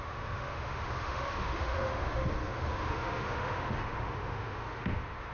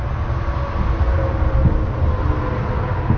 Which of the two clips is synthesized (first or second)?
first